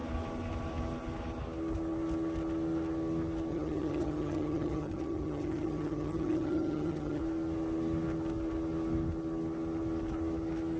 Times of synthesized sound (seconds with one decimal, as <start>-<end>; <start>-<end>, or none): 3.5-7.2

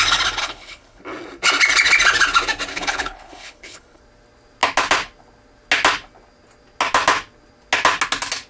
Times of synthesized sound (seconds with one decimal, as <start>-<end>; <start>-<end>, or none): 0.4-1.0; 2.7-4.0

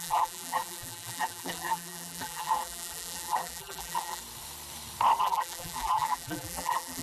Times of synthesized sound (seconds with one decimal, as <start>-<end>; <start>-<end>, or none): 0.0-4.2; 5.2-7.0

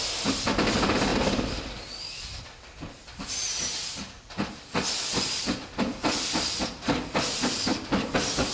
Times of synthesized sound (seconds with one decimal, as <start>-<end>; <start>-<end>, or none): none